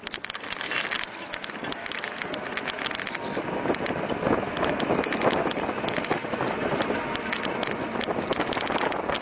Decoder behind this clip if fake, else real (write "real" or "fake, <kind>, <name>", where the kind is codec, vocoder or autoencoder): real